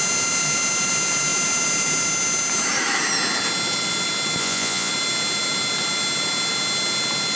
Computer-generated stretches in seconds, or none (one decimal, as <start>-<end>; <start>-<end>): 4.4-4.9

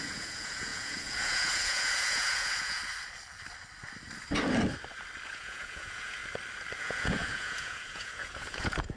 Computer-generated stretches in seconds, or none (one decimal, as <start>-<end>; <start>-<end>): 0.0-2.8; 5.3-6.2; 6.8-9.0

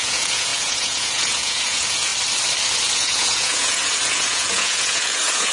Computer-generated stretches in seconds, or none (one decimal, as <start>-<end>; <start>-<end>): 0.0-2.1; 2.9-5.5

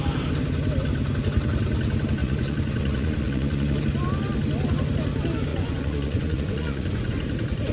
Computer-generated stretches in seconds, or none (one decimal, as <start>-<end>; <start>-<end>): 2.2-3.8; 5.5-7.1

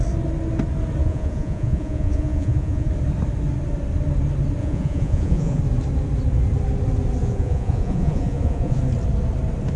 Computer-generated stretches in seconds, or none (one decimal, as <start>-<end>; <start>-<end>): 1.0-2.9; 4.6-5.6; 7.2-8.8

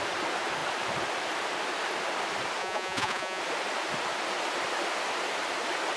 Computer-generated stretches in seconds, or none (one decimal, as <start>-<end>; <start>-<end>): 2.6-3.4